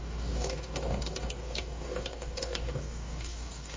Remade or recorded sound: remade